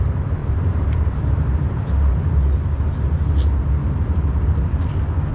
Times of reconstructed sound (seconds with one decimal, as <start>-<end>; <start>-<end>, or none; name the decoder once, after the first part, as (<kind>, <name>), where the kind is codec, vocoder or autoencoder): 0.4-3.6 (vocoder, BigVGAN v2)